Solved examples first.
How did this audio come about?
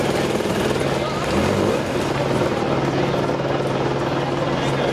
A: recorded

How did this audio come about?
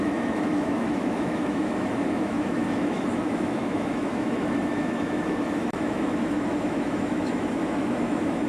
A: remade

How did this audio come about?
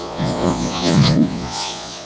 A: remade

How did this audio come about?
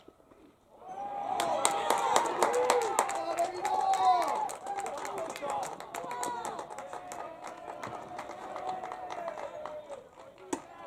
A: recorded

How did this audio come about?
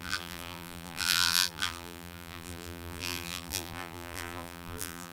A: remade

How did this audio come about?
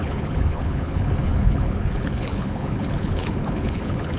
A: remade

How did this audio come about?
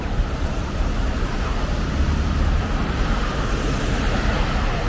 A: remade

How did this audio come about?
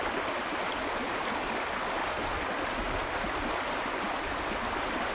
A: recorded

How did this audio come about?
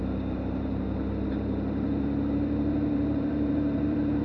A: remade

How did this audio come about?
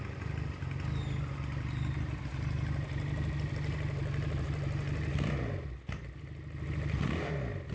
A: recorded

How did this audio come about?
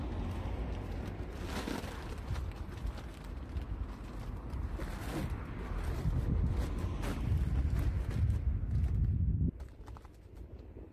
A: recorded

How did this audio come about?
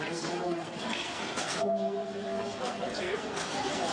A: remade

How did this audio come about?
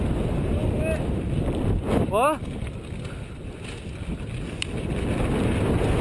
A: recorded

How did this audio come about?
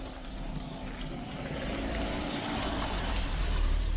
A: remade